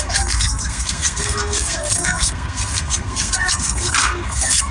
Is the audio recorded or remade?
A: remade